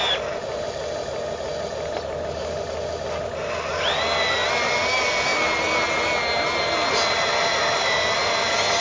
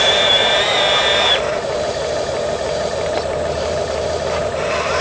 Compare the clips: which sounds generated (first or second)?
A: second